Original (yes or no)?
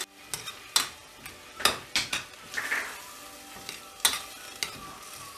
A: yes